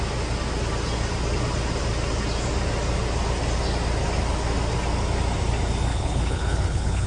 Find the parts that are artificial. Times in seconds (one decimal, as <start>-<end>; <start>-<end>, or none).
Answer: 5.9-7.1